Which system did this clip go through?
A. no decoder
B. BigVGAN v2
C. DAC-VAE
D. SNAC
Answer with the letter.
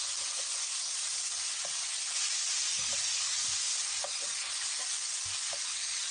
A